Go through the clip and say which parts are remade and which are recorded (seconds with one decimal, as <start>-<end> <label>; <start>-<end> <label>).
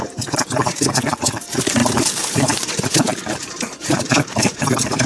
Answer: 0.0-1.8 recorded; 1.8-5.1 remade